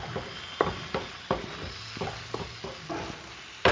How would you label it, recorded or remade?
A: remade